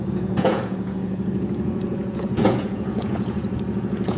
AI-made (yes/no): yes